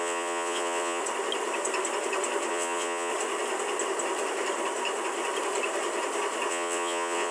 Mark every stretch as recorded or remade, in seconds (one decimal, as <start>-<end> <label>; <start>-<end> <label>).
0.0-1.0 remade; 1.0-2.5 recorded; 2.5-3.1 remade; 3.1-6.5 recorded; 6.5-7.3 remade